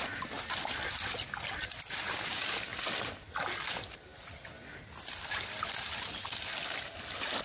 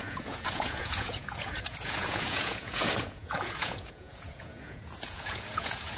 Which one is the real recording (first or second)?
first